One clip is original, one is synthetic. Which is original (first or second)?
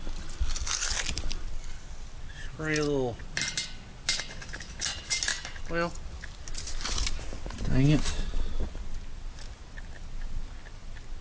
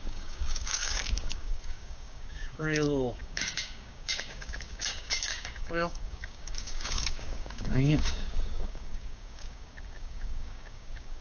first